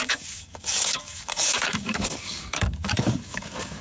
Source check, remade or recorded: remade